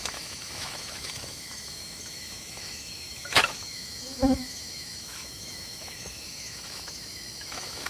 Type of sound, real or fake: fake